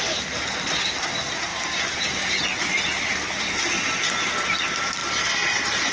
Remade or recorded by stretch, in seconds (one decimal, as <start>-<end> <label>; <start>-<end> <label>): 0.0-5.9 recorded